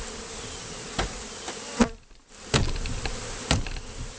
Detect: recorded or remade recorded